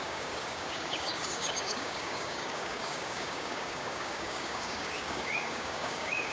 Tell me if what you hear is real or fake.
fake